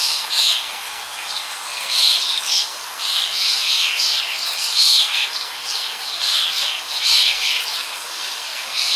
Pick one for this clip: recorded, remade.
remade